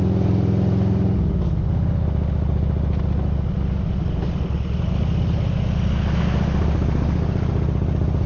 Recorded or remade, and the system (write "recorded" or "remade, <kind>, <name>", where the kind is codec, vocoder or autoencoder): recorded